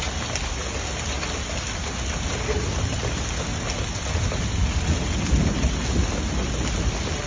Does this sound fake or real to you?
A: real